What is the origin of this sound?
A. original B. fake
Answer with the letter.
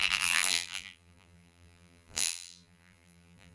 B